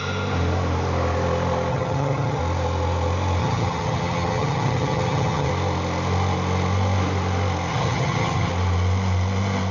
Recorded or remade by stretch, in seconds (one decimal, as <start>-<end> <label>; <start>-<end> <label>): 0.0-1.7 recorded; 1.7-2.4 remade; 2.4-3.4 recorded; 3.4-5.5 remade; 5.5-7.7 recorded; 7.7-8.5 remade; 8.5-9.7 recorded